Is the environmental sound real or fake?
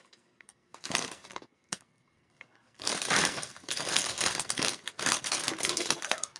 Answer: fake